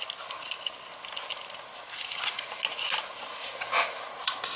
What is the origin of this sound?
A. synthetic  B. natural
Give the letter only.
B